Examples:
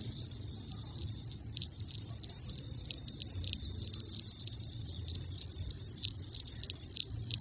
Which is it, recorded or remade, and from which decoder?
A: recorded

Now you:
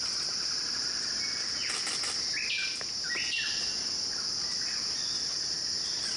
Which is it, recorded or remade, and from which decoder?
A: recorded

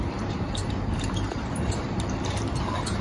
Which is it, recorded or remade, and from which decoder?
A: remade, vocoder, BigVGAN v2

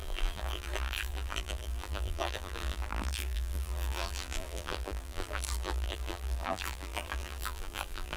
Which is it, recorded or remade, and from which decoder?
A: remade, vocoder, BigVGAN v2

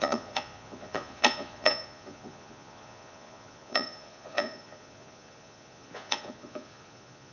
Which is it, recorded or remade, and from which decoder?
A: remade, vocoder, Vocos